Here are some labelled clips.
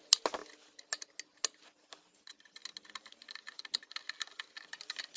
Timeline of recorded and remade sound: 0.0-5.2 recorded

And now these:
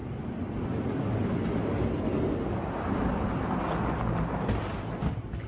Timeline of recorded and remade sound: 0.0-5.5 recorded

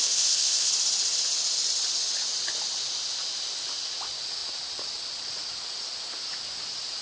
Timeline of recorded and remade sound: 0.0-0.7 remade; 0.7-7.0 recorded